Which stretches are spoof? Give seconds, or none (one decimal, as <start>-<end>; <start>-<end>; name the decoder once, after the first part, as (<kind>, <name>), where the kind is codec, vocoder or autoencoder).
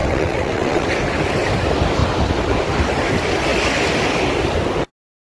0.0-0.9 (vocoder, WaveNeXt)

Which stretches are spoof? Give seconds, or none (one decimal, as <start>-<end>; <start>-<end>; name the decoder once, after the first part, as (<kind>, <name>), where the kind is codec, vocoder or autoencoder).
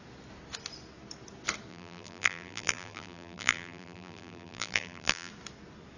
1.7-5.3 (vocoder, BigVGAN v2)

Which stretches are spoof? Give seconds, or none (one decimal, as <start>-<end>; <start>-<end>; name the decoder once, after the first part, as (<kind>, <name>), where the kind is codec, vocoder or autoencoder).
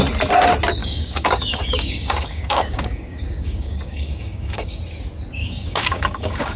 0.8-4.8 (codec, DAC); 5.3-6.6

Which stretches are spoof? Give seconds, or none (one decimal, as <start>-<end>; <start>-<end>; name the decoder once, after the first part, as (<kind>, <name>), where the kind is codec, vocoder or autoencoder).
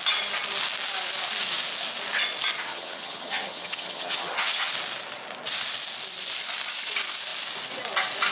2.7-4.7 (vocoder, HiFi-GAN)